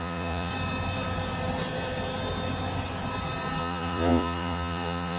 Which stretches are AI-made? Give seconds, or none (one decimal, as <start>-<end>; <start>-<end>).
0.0-0.5; 3.6-5.2